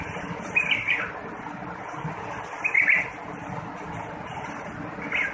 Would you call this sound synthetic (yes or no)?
no